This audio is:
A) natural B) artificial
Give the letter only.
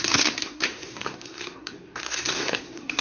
B